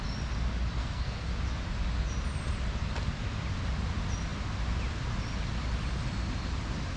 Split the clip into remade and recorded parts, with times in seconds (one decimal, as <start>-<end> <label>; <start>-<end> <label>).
0.0-0.8 recorded; 0.8-1.3 remade; 1.3-7.0 recorded

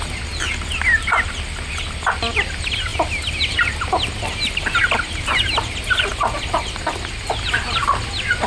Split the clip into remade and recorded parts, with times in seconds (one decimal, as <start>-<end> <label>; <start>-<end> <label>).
0.0-8.5 recorded

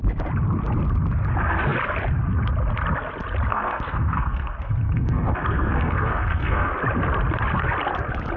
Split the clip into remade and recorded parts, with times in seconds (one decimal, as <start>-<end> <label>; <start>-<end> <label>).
0.0-3.5 recorded; 3.5-6.7 remade; 6.7-8.4 recorded

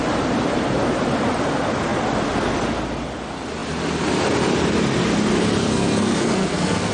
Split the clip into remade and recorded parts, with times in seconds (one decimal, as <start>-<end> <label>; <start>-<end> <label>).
0.0-5.6 recorded; 5.6-6.9 remade